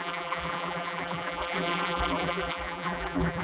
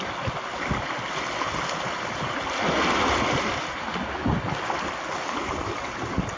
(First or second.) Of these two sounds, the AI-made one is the first